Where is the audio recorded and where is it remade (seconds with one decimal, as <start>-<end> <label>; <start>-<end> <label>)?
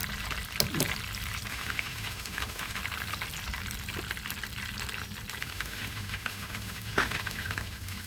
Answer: 0.0-1.5 recorded; 1.5-2.8 remade; 2.8-5.4 recorded; 5.4-8.1 remade